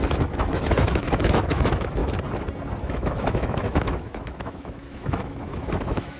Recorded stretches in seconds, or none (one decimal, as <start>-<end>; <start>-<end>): 2.0-2.8